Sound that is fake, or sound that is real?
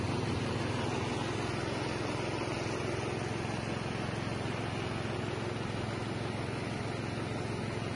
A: real